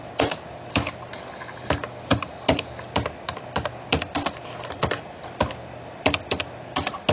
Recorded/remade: recorded